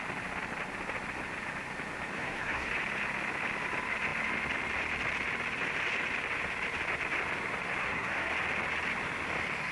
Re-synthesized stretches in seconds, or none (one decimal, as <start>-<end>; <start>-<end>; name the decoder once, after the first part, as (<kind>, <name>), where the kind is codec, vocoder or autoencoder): 2.1-2.7 (codec, SNAC); 7.8-8.3